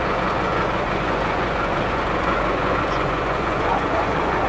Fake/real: fake